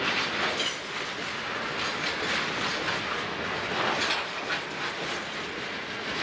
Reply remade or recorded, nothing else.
recorded